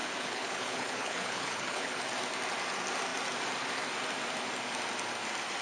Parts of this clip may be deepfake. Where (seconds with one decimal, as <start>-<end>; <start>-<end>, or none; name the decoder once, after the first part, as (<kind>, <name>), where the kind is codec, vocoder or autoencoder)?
0.0-2.0 (codec, HILCodec)